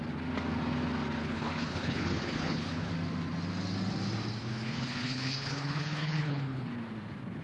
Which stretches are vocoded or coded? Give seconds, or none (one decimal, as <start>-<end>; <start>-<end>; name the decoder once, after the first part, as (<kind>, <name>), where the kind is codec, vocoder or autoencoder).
1.2-2.9 (codec, HILCodec); 4.4-6.7